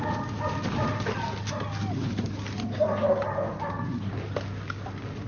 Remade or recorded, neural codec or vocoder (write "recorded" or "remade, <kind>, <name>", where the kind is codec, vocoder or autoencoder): recorded